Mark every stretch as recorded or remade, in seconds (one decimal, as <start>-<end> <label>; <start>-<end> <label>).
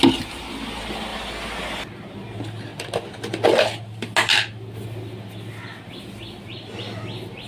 0.0-1.1 remade; 1.1-1.8 recorded; 1.8-2.7 remade; 2.7-7.5 recorded